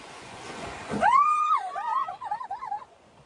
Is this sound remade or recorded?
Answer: remade